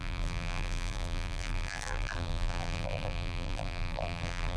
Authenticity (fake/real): fake